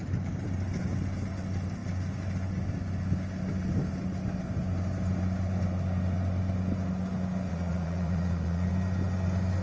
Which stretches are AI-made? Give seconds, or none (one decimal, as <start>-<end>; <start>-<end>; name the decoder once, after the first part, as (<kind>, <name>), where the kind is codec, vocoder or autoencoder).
7.5-8.7 (vocoder, Vocos)